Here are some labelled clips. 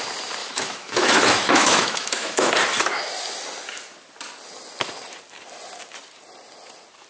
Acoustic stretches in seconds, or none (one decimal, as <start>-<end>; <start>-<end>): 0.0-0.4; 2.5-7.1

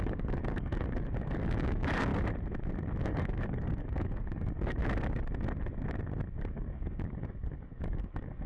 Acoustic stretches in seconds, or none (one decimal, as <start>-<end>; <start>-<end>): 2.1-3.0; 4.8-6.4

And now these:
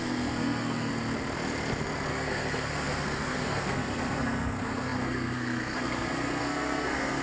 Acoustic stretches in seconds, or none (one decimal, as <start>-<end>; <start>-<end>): 0.9-2.1

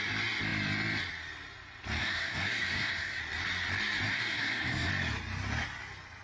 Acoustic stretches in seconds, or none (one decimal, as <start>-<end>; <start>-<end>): 0.0-2.0; 3.2-4.1; 4.9-6.2

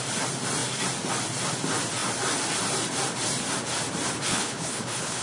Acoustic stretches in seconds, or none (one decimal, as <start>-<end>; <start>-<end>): 0.0-4.3